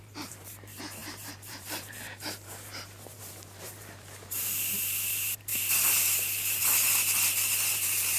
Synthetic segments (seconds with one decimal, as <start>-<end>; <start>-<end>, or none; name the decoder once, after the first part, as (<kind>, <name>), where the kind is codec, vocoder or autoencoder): 0.0-5.5 (vocoder, BigVGAN v2); 6.1-6.6; 7.7-8.2